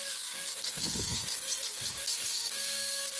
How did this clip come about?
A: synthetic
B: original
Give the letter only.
A